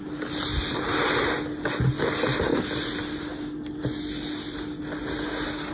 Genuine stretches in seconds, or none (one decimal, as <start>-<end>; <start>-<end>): 0.0-5.7